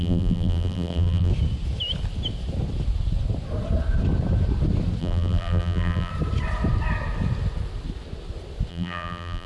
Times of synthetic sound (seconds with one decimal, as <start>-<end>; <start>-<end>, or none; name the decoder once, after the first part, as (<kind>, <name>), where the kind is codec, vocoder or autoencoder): 0.0-1.3 (vocoder, BigVGAN v2); 5.0-6.1; 8.7-9.5